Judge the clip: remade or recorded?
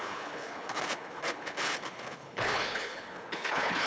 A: remade